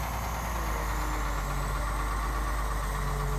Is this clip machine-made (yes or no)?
no